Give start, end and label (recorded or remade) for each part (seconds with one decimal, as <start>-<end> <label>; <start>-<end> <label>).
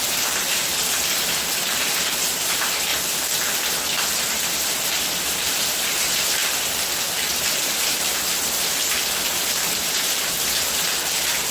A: 0.0-0.8 remade; 0.8-1.7 recorded; 1.7-2.9 remade; 2.9-4.0 recorded; 4.0-6.4 remade; 6.4-7.4 recorded; 7.4-11.5 remade